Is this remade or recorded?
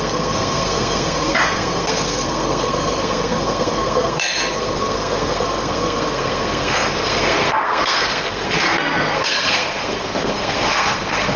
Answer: remade